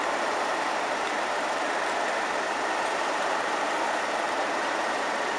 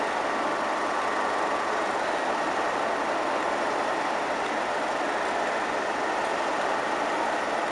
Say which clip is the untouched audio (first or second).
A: second